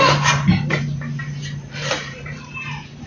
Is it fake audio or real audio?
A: fake